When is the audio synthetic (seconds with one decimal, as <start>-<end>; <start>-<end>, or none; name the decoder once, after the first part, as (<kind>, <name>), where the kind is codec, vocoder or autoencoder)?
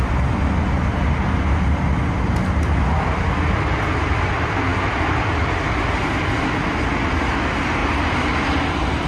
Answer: 4.7-5.5 (vocoder, BigVGAN v2); 7.8-9.1